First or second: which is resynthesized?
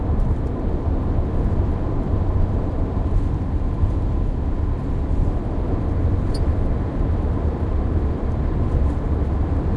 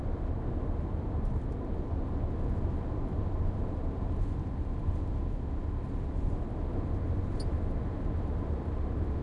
first